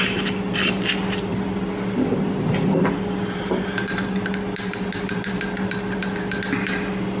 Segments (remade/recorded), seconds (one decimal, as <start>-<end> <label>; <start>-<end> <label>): 0.0-7.2 recorded